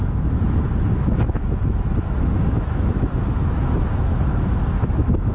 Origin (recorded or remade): remade